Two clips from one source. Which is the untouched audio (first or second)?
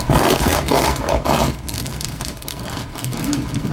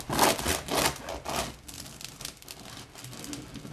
second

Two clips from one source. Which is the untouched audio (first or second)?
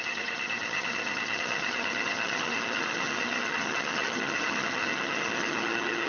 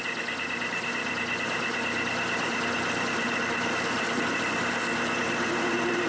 second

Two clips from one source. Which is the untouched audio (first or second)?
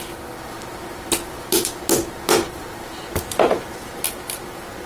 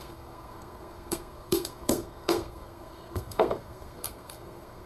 first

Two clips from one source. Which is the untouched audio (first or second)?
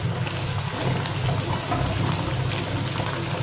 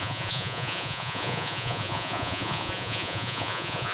first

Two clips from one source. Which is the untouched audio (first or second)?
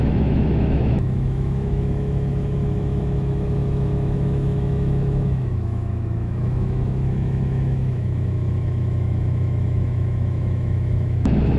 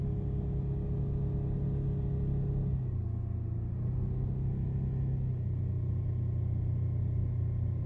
second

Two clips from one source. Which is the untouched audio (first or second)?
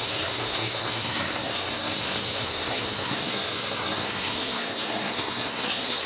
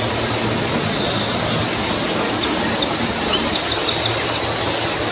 second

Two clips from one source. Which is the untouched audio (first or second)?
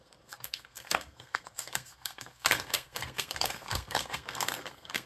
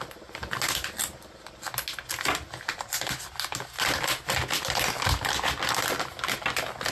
second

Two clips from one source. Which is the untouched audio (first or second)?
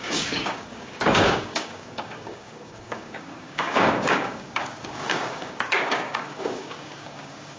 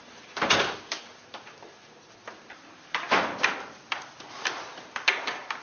second